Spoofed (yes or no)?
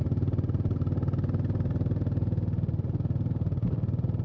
no